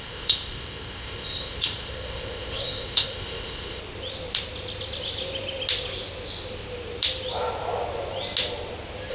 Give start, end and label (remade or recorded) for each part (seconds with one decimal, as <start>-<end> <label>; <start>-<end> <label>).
0.0-3.8 remade; 3.8-9.1 recorded